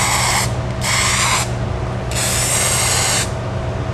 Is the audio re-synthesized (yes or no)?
no